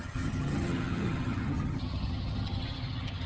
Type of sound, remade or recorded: remade